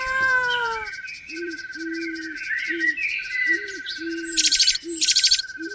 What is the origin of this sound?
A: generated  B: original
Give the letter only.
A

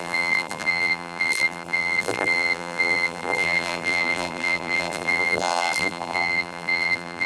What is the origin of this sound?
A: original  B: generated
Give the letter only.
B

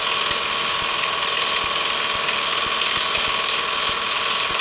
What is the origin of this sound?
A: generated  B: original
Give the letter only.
B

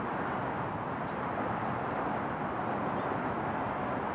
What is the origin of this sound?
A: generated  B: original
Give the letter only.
B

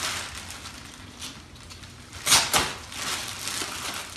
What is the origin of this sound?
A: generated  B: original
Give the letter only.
B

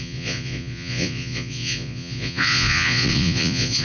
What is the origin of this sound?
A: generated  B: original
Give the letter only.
A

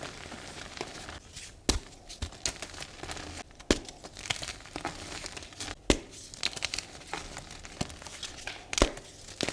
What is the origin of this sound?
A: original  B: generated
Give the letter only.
A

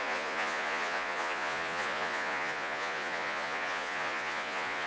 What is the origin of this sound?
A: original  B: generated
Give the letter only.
B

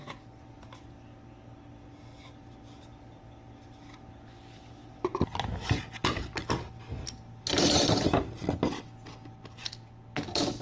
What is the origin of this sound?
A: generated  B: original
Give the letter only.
B